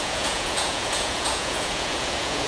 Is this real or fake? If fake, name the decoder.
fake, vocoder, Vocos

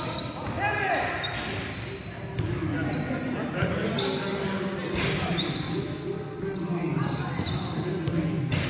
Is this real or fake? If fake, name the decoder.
real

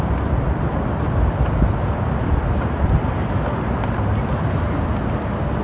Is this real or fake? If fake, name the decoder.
real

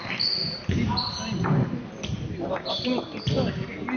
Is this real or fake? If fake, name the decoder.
real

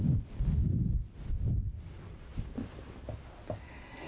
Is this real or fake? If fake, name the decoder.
real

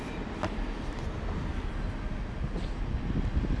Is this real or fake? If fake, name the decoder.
real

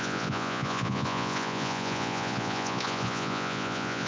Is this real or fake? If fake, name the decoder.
fake, vocoder, Vocos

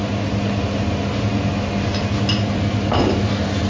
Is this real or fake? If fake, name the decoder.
real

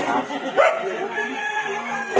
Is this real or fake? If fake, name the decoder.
real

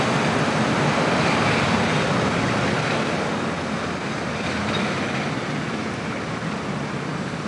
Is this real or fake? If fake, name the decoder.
real